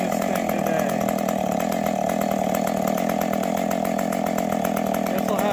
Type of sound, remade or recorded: recorded